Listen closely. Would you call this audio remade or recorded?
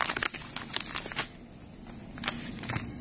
recorded